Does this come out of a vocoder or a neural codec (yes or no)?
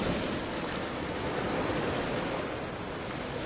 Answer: no